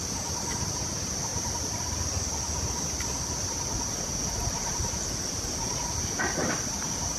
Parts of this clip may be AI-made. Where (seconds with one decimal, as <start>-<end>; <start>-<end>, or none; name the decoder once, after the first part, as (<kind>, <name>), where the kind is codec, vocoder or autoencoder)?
none